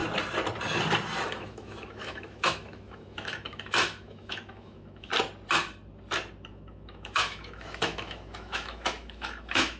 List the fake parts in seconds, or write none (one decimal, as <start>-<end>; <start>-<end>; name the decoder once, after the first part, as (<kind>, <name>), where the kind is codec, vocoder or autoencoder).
1.3-5.1 (autoencoder, DAC-VAE); 6.5-9.8

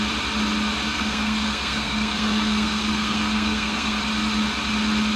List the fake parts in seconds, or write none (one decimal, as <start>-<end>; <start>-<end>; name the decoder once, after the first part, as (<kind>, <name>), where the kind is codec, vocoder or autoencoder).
0.9-4.0 (codec, SNAC)

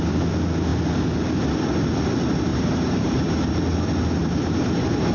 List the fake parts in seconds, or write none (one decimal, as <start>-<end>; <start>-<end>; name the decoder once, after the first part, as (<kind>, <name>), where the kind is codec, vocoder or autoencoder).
2.5-3.5 (vocoder, BigVGAN v2); 4.2-5.1

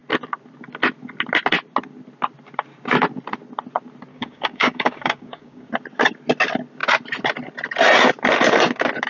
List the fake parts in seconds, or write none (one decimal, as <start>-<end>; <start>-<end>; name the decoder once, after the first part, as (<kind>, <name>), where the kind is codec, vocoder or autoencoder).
4.1-5.7 (codec, DAC)

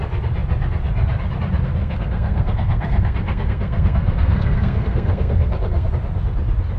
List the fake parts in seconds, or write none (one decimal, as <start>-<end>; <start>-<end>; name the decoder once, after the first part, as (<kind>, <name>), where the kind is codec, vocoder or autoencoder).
1.8-5.9 (codec, SNAC)

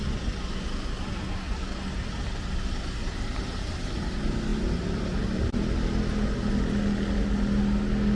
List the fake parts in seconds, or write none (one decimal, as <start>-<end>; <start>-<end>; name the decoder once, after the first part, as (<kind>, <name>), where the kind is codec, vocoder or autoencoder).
none